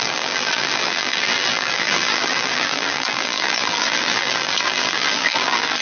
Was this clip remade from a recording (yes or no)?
yes